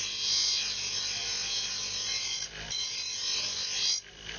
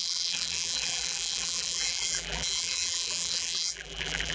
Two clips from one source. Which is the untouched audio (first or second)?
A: first